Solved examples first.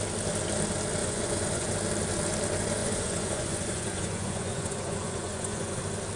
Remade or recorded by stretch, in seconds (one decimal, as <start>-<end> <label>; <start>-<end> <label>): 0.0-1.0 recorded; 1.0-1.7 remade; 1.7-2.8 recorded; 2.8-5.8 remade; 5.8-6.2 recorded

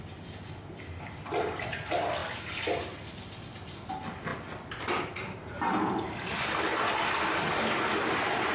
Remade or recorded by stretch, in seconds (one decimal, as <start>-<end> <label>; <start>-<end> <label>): 0.0-8.5 recorded

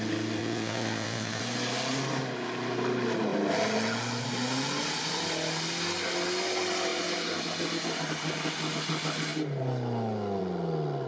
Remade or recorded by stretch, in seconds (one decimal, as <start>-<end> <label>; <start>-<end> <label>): 0.0-0.4 recorded; 0.4-1.4 remade; 1.4-11.1 recorded

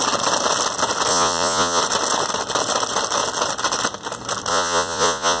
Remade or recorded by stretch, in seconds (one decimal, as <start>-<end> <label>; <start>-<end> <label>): 0.0-1.1 recorded; 1.1-1.8 remade; 1.8-4.5 recorded; 4.5-5.4 remade

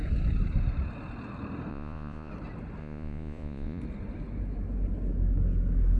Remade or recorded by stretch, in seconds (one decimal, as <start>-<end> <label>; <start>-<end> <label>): 0.0-1.7 recorded; 1.7-2.3 remade; 2.3-2.8 recorded; 2.8-3.8 remade; 3.8-6.0 recorded

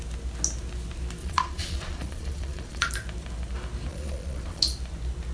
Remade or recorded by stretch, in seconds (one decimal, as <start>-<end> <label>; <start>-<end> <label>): 0.0-1.2 recorded; 1.2-2.9 remade; 2.9-3.9 recorded; 3.9-4.6 remade; 4.6-5.3 recorded